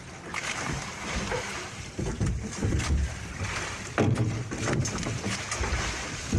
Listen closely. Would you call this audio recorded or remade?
recorded